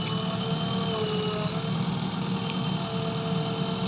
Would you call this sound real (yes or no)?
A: yes